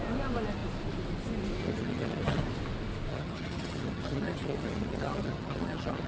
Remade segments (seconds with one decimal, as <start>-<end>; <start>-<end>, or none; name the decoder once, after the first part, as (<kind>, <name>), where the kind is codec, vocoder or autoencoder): 1.6-2.4 (vocoder, HiFi-GAN); 3.1-6.1